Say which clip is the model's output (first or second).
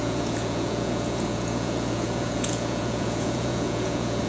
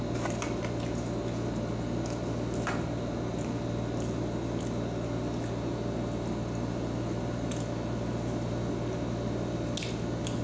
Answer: first